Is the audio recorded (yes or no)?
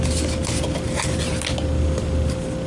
yes